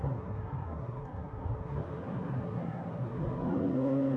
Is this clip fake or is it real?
fake